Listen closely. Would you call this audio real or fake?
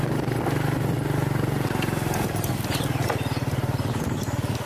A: real